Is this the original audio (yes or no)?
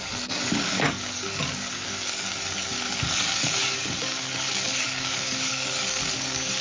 no